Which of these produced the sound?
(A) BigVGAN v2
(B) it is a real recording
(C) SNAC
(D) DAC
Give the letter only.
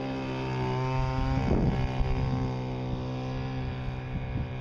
B